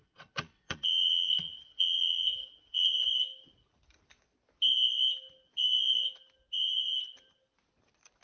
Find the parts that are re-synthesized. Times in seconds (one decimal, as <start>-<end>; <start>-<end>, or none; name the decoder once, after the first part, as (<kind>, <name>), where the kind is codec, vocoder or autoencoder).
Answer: 0.0-3.0 (vocoder, Vocos)